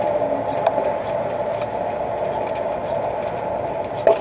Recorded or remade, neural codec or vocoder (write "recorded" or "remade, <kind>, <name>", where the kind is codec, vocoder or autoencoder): recorded